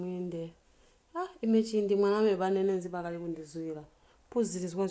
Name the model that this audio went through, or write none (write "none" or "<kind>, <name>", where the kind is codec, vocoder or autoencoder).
vocoder, BigVGAN v2